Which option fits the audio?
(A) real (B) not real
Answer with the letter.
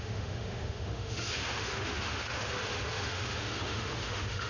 B